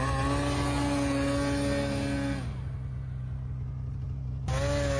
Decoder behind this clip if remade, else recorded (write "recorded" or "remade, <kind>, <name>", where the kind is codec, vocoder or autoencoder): recorded